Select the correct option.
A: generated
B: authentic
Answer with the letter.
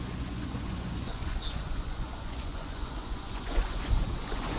A